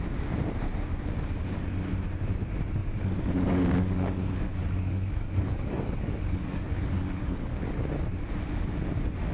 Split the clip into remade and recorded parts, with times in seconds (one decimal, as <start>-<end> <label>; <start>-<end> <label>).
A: 0.0-2.8 recorded; 2.8-7.9 remade; 7.9-9.3 recorded